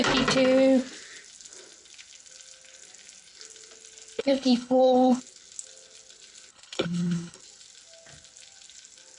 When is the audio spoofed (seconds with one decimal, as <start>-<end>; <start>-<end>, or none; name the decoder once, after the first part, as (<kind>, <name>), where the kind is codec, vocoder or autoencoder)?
4.2-5.2 (codec, HILCodec); 6.5-7.4